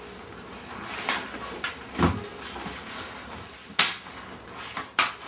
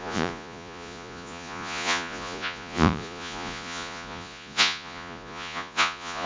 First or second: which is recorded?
first